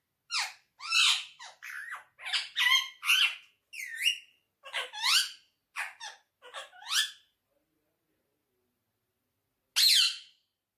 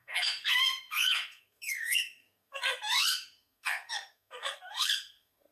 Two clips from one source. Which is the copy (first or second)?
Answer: second